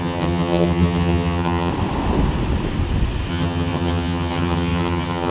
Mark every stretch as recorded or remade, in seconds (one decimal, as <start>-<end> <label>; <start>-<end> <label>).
0.0-1.7 remade; 1.7-3.3 recorded; 3.3-5.3 remade